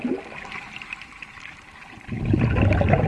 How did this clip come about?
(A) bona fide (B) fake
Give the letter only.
A